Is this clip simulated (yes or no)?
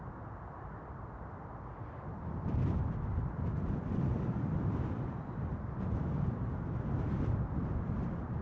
yes